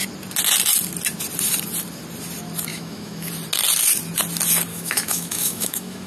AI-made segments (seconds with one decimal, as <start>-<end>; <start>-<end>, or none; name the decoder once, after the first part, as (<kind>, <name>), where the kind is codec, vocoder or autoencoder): 2.7-3.3 (autoencoder, DAC-VAE); 4.7-6.1